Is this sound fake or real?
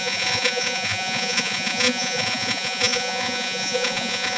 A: fake